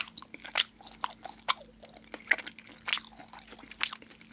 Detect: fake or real real